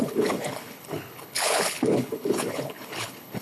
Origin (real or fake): fake